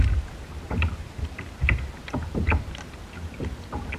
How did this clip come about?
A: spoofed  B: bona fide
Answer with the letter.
B